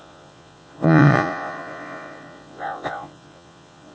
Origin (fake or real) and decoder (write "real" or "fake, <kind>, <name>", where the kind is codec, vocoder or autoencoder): fake, vocoder, Vocos